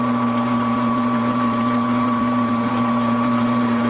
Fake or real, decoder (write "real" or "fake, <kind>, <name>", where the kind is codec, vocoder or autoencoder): fake, vocoder, BigVGAN v2